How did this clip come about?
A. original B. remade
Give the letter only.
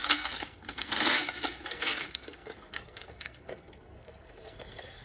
B